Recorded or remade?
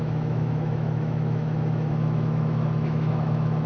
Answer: remade